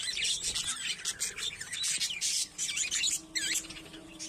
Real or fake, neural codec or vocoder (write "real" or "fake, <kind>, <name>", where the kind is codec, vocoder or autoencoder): real